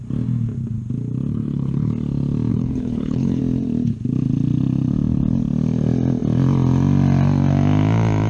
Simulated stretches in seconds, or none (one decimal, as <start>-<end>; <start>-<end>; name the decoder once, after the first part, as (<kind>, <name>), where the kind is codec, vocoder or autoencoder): 1.3-1.9 (codec, HILCodec); 2.5-3.4